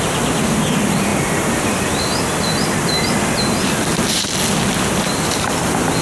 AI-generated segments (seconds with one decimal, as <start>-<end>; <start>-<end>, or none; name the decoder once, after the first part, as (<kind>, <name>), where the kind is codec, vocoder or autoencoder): none